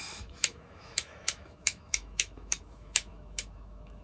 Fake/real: fake